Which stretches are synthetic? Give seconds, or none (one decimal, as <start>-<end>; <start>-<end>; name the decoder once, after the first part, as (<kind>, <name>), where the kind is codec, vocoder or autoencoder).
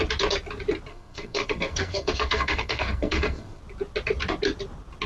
0.9-3.6 (codec, SNAC)